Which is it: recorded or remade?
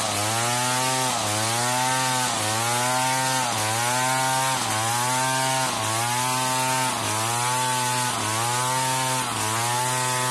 recorded